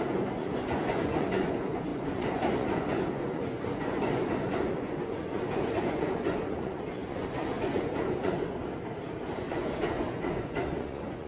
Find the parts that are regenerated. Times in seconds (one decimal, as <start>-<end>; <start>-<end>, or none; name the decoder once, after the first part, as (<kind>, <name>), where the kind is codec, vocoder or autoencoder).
0.0-8.6 (vocoder, Vocos); 9.4-11.3